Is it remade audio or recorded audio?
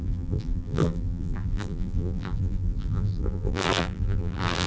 remade